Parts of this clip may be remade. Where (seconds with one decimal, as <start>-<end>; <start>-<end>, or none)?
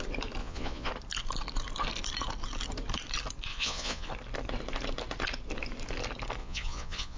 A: 0.4-0.9; 3.5-4.1; 6.4-7.2